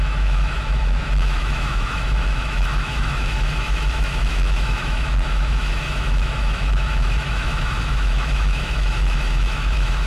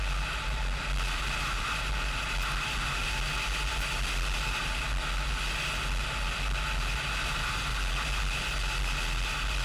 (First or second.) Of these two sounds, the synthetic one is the first